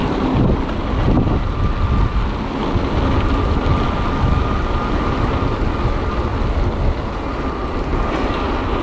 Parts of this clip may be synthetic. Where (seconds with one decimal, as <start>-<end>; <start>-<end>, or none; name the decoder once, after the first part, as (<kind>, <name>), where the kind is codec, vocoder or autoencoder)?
0.0-0.5 (vocoder, BigVGAN v2)